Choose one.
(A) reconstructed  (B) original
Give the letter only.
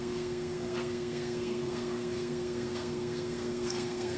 A